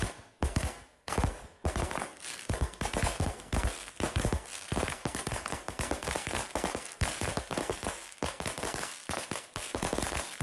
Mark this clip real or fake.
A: fake